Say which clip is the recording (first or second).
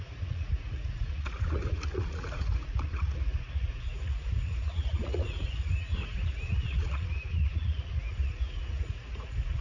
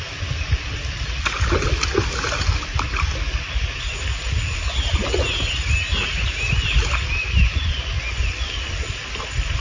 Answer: second